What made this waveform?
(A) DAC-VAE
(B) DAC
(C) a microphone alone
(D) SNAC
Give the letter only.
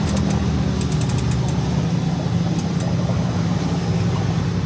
C